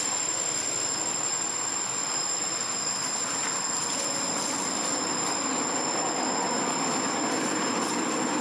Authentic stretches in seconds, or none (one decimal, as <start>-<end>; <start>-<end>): 0.0-8.4